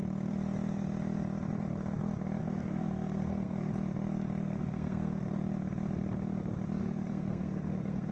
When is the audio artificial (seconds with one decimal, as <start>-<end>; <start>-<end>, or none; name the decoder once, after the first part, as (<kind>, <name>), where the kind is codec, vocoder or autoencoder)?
2.4-3.7 (codec, SNAC); 4.4-5.3; 6.8-8.1